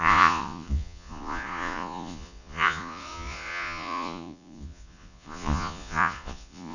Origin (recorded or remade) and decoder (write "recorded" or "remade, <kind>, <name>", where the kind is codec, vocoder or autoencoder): remade, vocoder, Vocos